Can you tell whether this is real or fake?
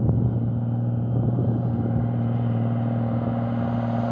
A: real